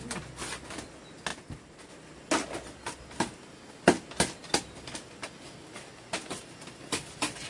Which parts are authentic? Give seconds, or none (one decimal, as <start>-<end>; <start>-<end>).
0.0-7.5